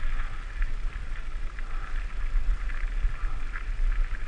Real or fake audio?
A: real